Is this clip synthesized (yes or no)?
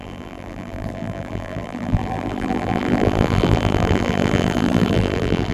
yes